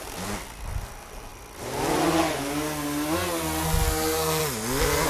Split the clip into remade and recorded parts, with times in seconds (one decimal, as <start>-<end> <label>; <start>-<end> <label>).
0.0-5.1 recorded